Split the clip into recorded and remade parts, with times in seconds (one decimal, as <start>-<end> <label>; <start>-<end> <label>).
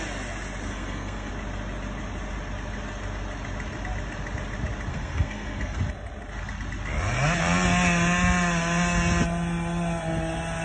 0.0-0.7 recorded; 0.7-1.3 remade; 1.3-4.9 recorded; 4.9-5.8 remade; 5.8-10.6 recorded